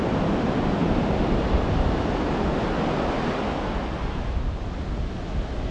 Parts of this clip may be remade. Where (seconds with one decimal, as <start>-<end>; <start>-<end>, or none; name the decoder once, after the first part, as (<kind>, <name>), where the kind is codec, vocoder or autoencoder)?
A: none